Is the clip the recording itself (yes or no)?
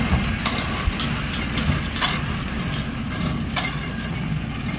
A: yes